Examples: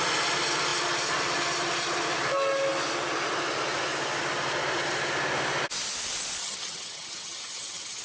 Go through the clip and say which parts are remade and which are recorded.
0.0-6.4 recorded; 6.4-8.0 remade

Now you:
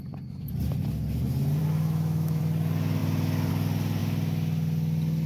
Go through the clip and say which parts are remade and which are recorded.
0.0-1.6 recorded; 1.6-2.4 remade; 2.4-5.3 recorded

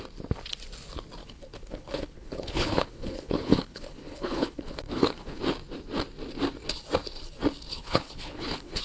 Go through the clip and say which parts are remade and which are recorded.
0.0-1.2 recorded; 1.2-5.4 remade; 5.4-7.7 recorded; 7.7-8.8 remade

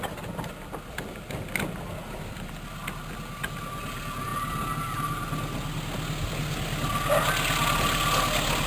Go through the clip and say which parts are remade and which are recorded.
0.0-2.0 recorded; 2.0-2.5 remade; 2.5-8.7 recorded

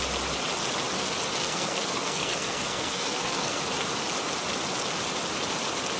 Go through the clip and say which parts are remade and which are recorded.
0.0-1.4 recorded; 1.4-3.6 remade; 3.6-6.0 recorded

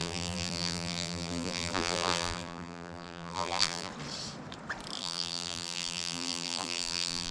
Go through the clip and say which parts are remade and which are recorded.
0.0-3.9 remade; 3.9-5.0 recorded; 5.0-7.3 remade